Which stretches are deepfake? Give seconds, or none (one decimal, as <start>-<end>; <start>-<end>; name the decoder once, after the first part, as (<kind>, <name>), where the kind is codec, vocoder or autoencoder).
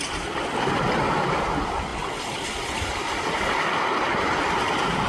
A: none